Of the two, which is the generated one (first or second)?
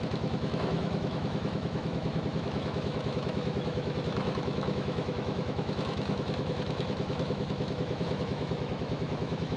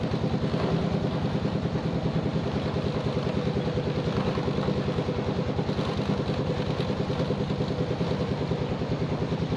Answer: first